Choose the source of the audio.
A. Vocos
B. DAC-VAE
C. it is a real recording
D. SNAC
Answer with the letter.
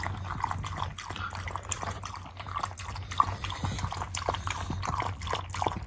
C